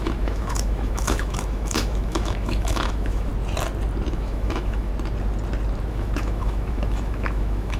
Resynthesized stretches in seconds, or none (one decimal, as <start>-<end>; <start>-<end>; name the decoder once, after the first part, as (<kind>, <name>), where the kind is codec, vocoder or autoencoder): 0.0-3.3 (autoencoder, DAC-VAE); 4.1-4.9; 5.9-7.8